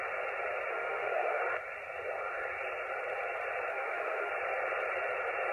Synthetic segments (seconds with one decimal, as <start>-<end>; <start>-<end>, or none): 0.7-1.4; 3.7-4.3